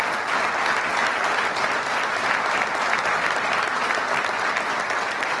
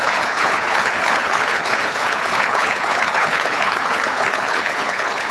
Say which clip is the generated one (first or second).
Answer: second